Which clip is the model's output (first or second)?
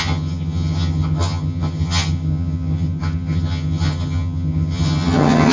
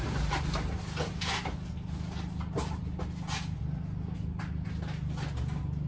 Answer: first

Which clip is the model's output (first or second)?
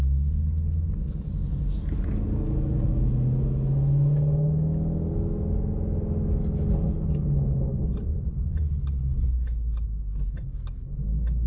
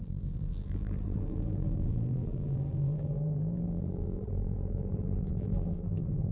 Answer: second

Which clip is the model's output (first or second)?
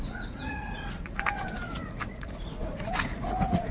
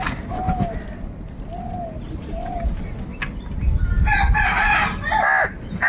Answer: first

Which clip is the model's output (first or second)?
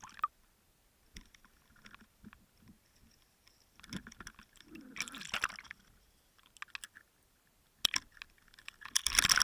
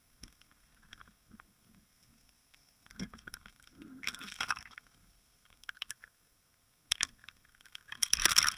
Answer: second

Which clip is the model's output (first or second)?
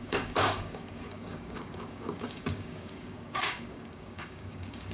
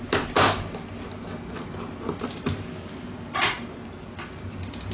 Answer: first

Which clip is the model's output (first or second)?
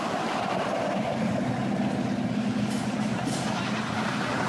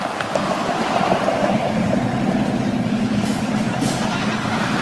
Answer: second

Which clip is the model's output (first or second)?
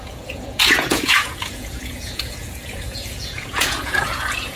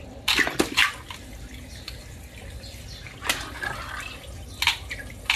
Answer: first